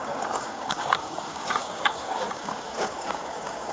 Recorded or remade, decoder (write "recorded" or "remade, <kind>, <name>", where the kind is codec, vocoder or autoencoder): remade, codec, DAC